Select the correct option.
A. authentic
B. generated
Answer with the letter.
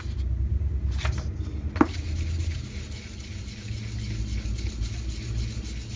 A